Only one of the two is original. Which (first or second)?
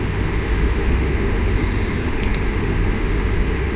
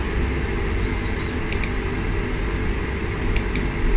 second